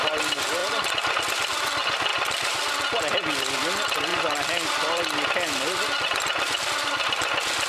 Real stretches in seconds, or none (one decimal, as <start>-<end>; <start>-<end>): 0.0-7.7